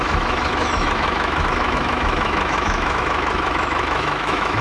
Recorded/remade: remade